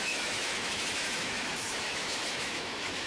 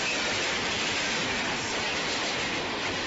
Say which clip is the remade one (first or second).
first